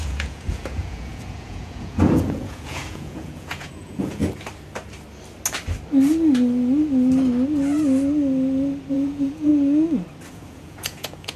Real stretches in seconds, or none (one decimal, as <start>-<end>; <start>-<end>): 4.2-8.9; 9.5-10.3